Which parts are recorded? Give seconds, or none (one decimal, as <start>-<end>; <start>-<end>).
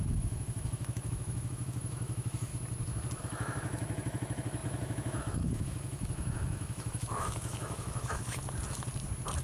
2.5-3.2; 8.4-9.4